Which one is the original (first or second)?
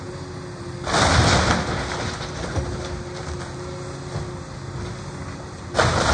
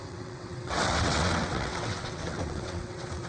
first